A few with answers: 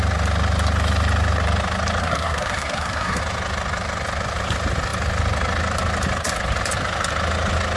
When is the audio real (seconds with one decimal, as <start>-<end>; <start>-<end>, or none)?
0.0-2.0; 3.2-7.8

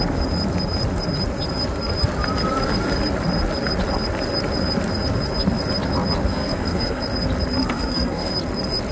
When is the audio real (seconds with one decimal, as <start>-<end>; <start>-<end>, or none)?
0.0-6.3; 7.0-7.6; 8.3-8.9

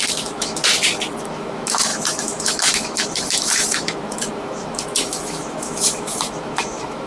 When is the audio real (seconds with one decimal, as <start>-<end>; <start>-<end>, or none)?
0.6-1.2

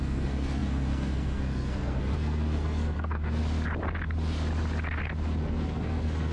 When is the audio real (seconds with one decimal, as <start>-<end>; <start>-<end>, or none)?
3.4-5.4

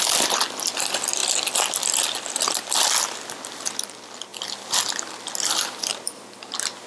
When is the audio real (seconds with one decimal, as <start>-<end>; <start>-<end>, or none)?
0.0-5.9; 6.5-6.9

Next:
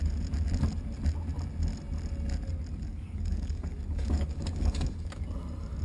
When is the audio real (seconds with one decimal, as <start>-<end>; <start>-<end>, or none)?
0.0-2.9; 5.2-5.8